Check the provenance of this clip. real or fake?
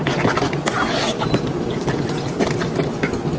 real